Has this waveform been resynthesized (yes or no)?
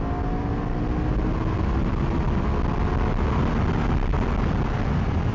no